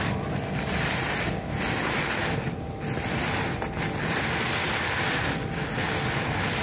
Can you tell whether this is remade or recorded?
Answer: recorded